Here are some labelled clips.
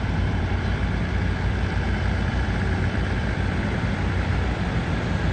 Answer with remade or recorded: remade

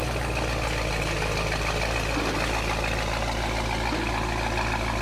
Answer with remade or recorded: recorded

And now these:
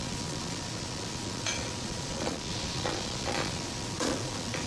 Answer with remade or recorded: remade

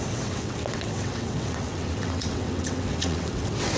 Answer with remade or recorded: remade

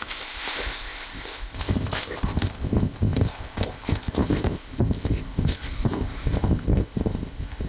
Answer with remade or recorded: remade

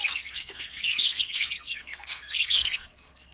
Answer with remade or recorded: remade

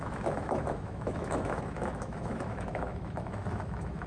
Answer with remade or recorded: remade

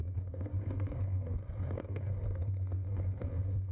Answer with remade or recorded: remade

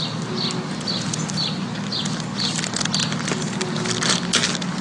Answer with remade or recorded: recorded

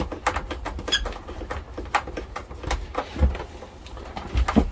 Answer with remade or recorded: recorded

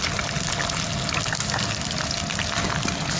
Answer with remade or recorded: recorded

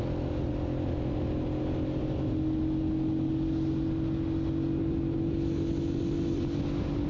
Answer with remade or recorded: recorded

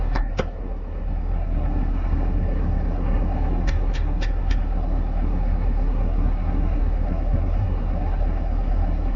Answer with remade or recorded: remade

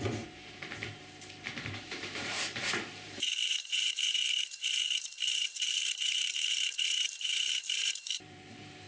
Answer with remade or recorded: remade